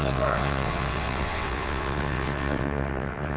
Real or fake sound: fake